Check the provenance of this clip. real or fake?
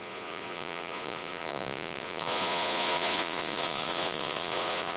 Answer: fake